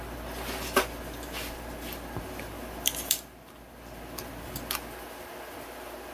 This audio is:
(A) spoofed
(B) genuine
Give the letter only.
A